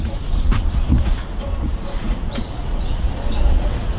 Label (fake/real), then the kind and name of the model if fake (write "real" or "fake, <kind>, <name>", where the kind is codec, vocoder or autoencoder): fake, vocoder, Vocos